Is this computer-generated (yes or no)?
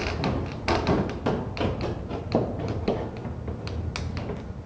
no